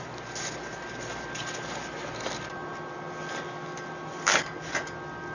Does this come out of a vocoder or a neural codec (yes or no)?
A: no